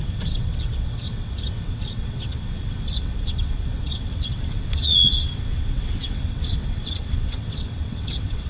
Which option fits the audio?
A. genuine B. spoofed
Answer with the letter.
B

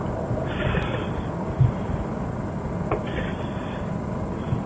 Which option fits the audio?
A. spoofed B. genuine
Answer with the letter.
B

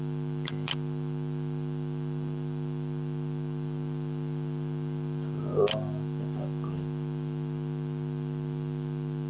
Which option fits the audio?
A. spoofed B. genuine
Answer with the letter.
B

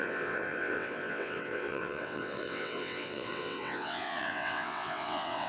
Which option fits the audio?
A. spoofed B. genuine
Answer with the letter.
A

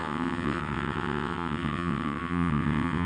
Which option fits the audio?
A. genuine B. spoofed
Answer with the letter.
B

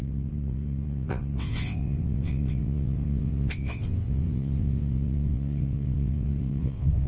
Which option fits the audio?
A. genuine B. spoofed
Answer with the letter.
B